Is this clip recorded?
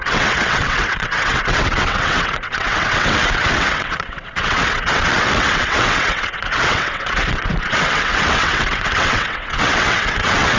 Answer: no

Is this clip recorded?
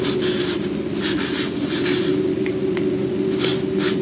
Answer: yes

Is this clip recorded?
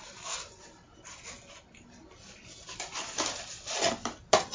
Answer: yes